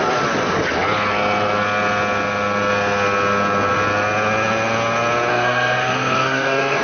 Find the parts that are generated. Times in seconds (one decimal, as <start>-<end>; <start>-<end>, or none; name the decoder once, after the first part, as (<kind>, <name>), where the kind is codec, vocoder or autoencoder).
5.3-6.8 (codec, SNAC)